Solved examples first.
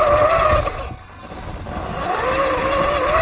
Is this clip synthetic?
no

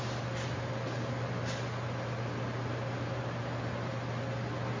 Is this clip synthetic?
no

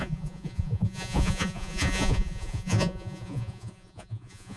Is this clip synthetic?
yes